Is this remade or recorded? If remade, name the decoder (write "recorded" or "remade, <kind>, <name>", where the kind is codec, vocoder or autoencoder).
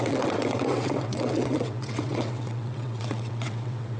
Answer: remade, vocoder, WaveNeXt